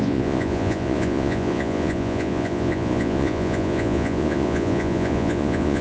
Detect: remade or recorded remade